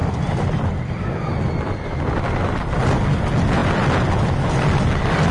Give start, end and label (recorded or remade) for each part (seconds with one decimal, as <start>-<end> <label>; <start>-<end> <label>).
0.0-5.3 recorded